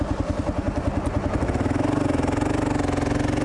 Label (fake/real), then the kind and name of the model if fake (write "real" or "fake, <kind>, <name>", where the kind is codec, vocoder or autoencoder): real